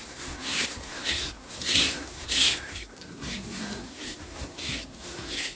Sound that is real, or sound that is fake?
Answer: fake